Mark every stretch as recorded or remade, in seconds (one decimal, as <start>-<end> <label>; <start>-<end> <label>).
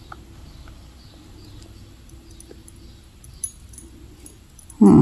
0.0-5.0 recorded